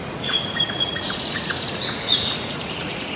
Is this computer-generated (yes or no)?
yes